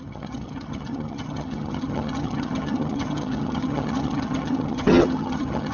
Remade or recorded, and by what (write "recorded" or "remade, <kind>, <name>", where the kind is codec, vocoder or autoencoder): remade, vocoder, HiFi-GAN